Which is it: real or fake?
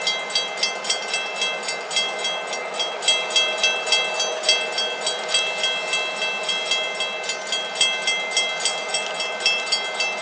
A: real